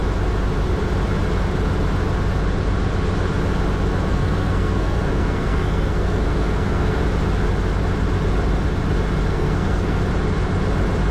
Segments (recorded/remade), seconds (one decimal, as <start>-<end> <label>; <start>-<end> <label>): 0.0-4.1 recorded; 4.1-7.0 remade; 7.0-9.3 recorded; 9.3-10.0 remade; 10.0-11.1 recorded